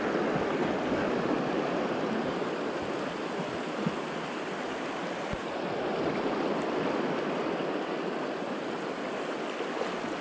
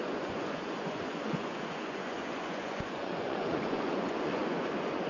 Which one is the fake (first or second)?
second